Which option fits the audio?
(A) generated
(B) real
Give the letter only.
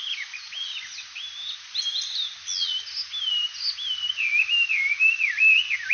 B